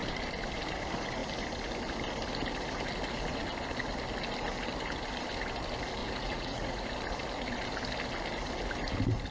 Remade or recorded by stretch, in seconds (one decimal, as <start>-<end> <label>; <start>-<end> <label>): 0.0-6.0 recorded; 6.0-6.9 remade; 6.9-9.3 recorded